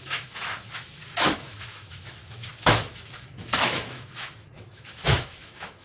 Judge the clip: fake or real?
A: fake